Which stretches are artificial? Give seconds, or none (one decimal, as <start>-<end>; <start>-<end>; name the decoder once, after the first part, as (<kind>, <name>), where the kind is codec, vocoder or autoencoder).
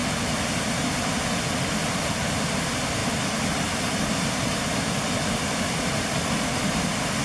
none